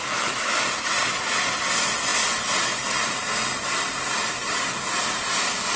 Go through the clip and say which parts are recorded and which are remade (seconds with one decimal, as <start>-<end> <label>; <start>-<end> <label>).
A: 0.0-0.6 remade; 0.6-5.8 recorded